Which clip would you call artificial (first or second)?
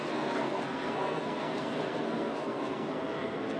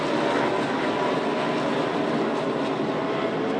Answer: first